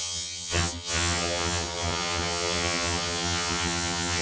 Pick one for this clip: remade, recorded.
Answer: remade